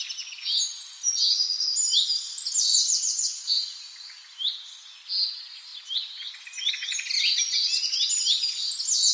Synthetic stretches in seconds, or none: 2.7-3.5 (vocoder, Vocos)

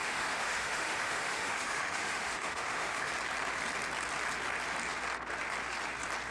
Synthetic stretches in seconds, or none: 0.0-3.1 (autoencoder, DAC-VAE)

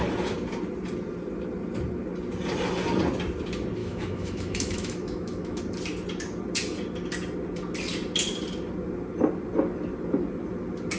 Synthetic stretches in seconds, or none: 3.8-5.6 (autoencoder, DAC-VAE)

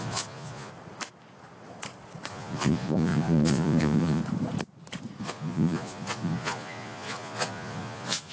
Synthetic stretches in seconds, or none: 0.0-0.7 (vocoder, Vocos); 2.3-4.2; 5.2-8.3

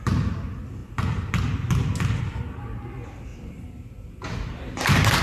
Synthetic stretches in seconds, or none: none